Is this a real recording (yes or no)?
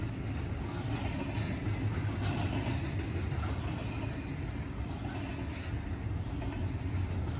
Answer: yes